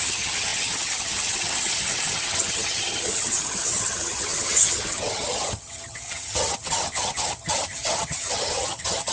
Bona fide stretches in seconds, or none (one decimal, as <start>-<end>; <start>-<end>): none